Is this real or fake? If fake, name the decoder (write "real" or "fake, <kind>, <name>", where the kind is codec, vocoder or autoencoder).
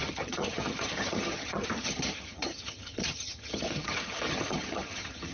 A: fake, vocoder, HiFi-GAN